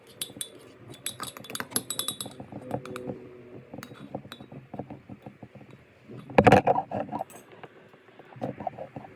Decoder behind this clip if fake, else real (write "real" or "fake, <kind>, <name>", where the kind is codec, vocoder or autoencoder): real